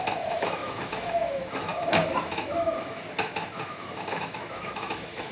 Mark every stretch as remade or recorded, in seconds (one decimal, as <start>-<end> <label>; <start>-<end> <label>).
0.0-5.3 remade